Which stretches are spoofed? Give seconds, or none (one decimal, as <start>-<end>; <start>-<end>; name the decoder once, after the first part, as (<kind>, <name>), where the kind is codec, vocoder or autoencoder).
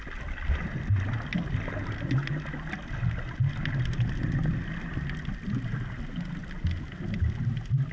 none